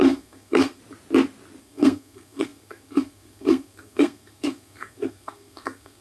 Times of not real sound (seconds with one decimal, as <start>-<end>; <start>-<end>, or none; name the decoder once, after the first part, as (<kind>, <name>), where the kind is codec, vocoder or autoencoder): 0.0-0.8 (codec, SNAC); 1.6-6.0